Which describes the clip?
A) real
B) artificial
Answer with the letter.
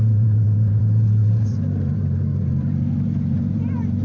B